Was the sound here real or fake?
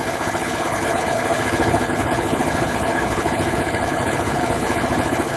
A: fake